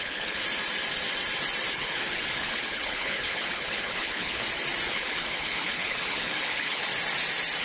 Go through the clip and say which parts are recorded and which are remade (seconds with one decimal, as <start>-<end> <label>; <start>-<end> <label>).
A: 0.0-0.4 remade; 0.4-1.7 recorded; 1.7-4.4 remade; 4.4-4.9 recorded; 4.9-6.9 remade; 6.9-7.6 recorded